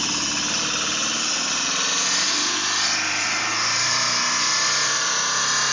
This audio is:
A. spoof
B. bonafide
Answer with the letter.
B